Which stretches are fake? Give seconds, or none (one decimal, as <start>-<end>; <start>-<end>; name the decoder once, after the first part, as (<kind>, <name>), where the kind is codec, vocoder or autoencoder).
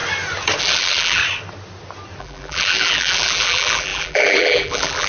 0.6-1.2 (vocoder, BigVGAN v2); 2.2-5.1